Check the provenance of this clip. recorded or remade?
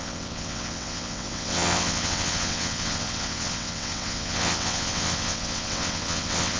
remade